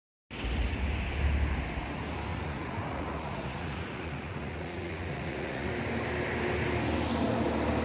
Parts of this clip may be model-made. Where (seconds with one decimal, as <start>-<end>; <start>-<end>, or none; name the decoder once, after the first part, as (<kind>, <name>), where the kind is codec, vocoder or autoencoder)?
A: 2.3-5.7 (vocoder, Vocos)